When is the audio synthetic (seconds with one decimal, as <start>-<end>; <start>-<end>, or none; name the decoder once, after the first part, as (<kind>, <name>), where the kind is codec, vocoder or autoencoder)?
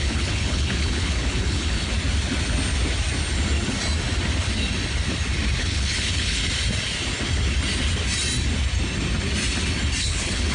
0.0-1.9 (codec, HILCodec); 5.6-6.4; 10.0-10.5